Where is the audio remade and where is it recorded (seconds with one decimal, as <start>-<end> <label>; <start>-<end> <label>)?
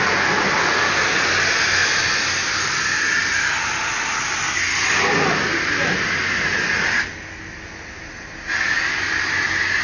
0.0-9.8 recorded